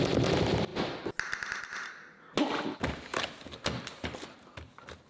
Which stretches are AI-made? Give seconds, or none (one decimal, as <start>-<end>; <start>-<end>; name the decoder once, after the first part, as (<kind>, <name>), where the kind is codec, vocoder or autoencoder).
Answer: 0.0-0.7 (vocoder, BigVGAN v2); 3.8-5.1